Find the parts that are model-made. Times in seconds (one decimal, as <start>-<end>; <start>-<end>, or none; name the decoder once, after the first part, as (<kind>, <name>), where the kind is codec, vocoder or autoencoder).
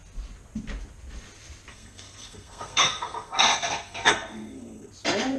1.7-4.9 (codec, SNAC)